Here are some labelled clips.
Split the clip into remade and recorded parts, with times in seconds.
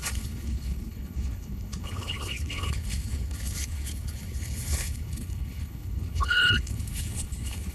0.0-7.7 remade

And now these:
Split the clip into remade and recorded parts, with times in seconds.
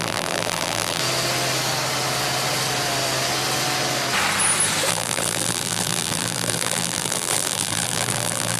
0.0-1.0 remade; 1.0-4.9 recorded; 4.9-8.6 remade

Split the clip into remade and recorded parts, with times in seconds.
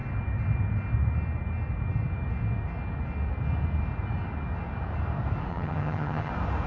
0.0-5.5 recorded; 5.5-6.3 remade; 6.3-6.7 recorded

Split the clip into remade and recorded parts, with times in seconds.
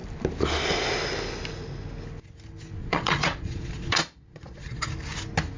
0.0-2.8 recorded; 2.8-4.9 remade; 4.9-5.6 recorded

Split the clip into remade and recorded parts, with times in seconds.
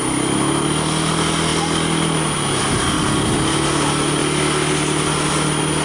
0.0-5.8 recorded